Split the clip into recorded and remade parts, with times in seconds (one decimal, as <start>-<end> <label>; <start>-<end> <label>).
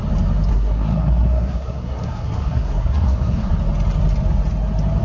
0.0-0.5 recorded; 0.5-3.5 remade; 3.5-5.0 recorded